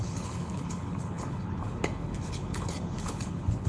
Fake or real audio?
fake